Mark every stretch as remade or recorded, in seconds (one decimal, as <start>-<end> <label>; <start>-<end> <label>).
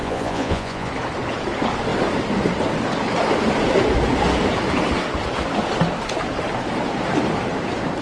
0.0-0.9 remade; 0.9-8.0 recorded